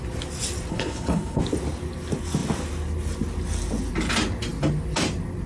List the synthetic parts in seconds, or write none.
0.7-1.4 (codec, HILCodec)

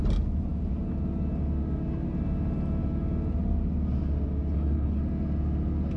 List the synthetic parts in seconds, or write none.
4.5-5.0 (codec, HILCodec)

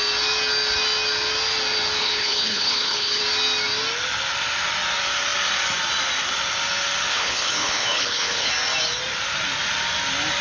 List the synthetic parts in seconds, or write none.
2.0-3.2 (codec, HILCodec); 7.1-8.5

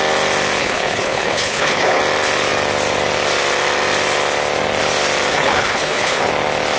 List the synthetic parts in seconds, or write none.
0.6-2.0 (codec, HILCodec); 5.3-6.3

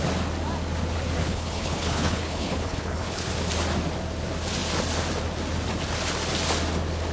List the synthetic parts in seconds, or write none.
1.2-3.3 (codec, HILCodec)

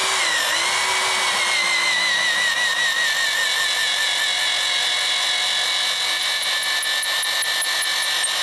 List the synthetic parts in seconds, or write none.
none

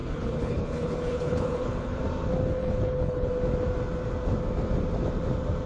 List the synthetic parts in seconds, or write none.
0.0-2.0 (codec, HILCodec); 2.6-3.3